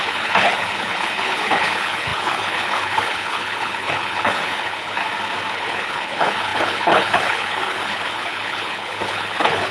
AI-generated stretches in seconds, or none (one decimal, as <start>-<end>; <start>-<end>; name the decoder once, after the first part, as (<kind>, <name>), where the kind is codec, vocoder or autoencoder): 0.0-5.0 (codec, HILCodec); 5.5-9.7